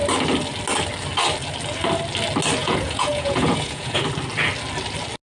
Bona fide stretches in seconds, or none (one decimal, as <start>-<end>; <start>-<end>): 0.0-2.6; 4.0-5.3